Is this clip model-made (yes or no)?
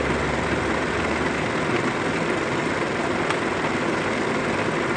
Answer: no